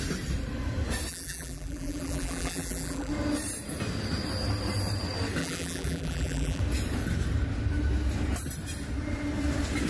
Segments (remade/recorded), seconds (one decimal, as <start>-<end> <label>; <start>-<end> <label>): 0.0-1.1 recorded; 1.1-3.1 remade; 3.1-5.4 recorded; 5.4-6.6 remade; 6.6-9.9 recorded